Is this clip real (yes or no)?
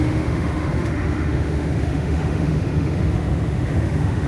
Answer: no